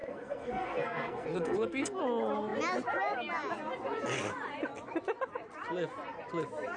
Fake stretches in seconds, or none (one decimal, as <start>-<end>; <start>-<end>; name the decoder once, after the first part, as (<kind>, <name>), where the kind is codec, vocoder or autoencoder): 0.0-2.0 (codec, SNAC)